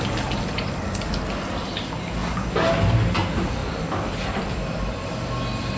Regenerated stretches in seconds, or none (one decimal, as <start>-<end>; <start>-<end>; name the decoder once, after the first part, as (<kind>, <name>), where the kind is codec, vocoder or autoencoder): 3.6-5.1 (vocoder, BigVGAN v2)